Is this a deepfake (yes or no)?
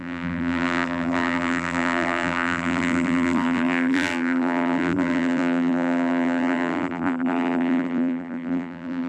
yes